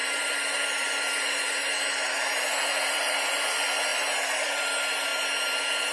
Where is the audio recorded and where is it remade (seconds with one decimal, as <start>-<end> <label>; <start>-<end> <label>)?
0.0-3.5 remade; 3.5-3.9 recorded; 3.9-4.6 remade; 4.6-5.9 recorded